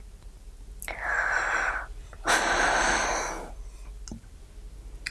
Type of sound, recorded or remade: recorded